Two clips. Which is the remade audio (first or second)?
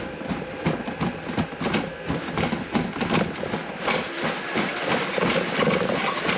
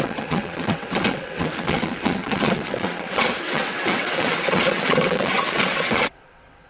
second